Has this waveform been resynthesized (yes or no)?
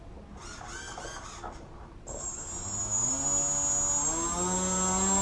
no